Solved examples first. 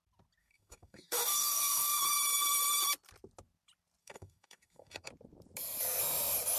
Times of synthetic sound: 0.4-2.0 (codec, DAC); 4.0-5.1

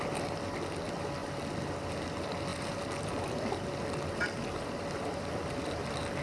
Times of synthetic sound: 1.2-2.1 (vocoder, BigVGAN v2); 2.5-6.2

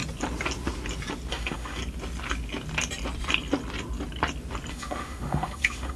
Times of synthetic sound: 1.3-1.8 (autoencoder, DAC-VAE); 4.7-6.0

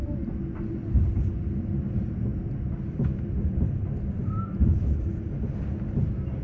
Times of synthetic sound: none